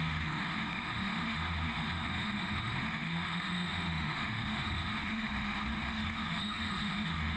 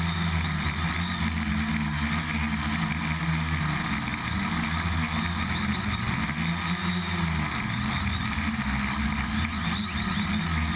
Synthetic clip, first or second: first